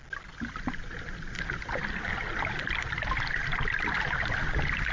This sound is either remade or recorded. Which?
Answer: recorded